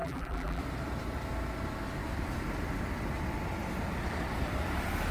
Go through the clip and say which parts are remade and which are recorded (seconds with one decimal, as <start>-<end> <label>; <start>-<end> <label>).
0.0-0.6 remade; 0.6-5.1 recorded